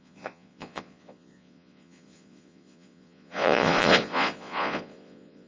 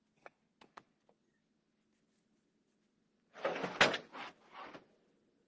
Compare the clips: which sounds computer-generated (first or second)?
first